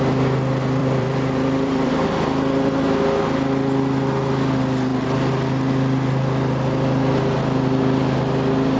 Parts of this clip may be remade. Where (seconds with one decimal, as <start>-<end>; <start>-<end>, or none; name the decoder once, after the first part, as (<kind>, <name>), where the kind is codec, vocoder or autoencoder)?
0.8-1.9 (vocoder, BigVGAN v2)